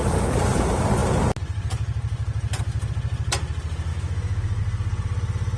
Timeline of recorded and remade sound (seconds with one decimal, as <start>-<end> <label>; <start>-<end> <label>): 0.0-3.9 recorded; 3.9-4.6 remade; 4.6-5.6 recorded